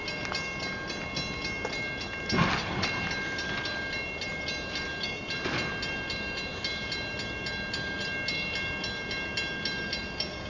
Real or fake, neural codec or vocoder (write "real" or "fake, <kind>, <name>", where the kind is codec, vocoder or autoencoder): real